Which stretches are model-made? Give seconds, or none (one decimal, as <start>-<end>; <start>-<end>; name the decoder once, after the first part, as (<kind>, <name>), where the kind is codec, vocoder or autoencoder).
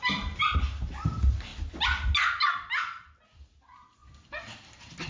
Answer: 4.0-5.1 (vocoder, BigVGAN v2)